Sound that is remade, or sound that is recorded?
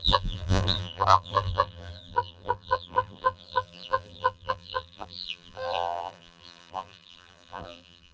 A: remade